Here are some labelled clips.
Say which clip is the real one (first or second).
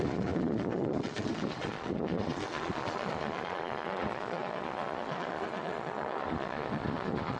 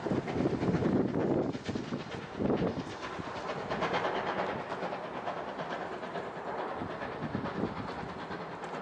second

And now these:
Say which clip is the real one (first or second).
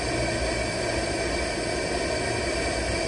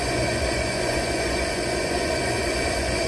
first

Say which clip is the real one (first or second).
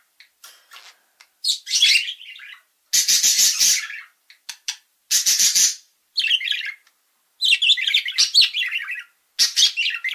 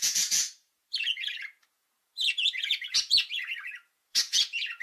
first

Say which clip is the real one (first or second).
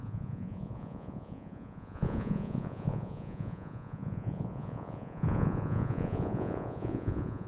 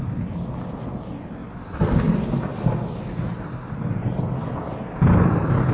second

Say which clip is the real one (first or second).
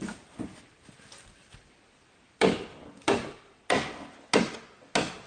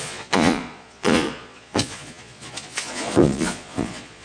first